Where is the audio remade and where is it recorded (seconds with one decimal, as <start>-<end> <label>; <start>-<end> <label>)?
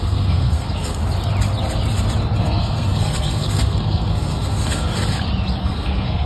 0.0-1.0 remade; 1.0-2.4 recorded; 2.4-4.9 remade; 4.9-5.6 recorded; 5.6-6.3 remade